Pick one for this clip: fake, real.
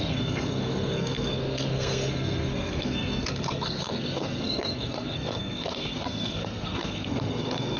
fake